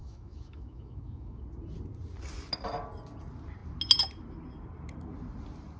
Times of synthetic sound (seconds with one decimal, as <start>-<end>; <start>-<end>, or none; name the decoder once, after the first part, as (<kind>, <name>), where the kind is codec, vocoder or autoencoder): 0.0-1.4 (autoencoder, DAC-VAE)